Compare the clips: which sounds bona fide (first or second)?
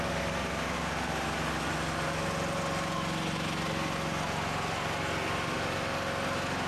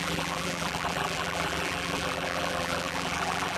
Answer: first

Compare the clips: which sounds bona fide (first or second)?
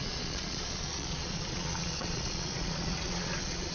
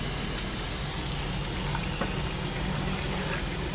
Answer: second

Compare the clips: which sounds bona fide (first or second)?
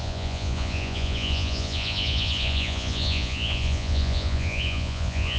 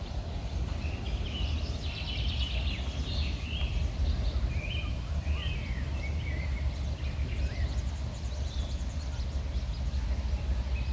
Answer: second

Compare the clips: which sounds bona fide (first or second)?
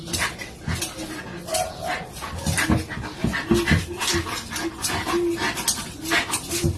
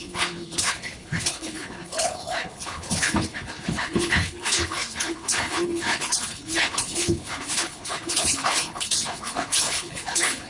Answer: first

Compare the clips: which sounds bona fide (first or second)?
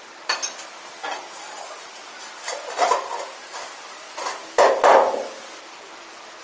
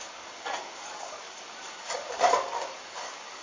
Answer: first